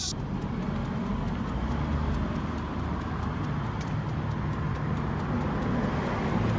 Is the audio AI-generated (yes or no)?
no